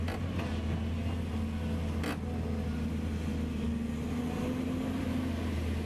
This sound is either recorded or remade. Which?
recorded